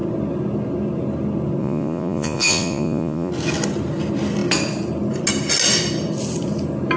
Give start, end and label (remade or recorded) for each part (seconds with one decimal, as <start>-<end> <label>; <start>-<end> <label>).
0.0-1.6 recorded; 1.6-3.3 remade; 3.3-7.0 recorded